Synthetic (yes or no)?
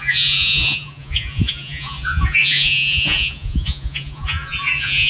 yes